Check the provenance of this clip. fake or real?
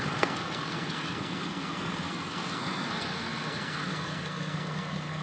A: fake